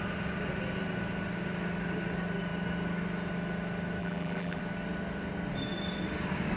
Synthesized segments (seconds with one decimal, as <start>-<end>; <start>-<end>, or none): 4.0-4.6